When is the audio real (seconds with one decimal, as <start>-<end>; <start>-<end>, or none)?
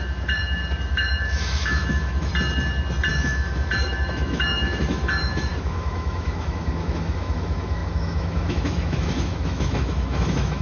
0.4-0.9; 2.3-3.1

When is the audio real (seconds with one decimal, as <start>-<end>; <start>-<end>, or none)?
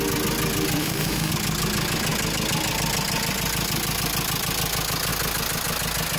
0.0-0.8; 1.3-6.2